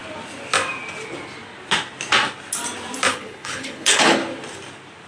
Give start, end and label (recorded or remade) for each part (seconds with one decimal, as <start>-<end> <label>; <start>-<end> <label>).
0.0-3.1 recorded; 3.1-4.2 remade; 4.2-5.1 recorded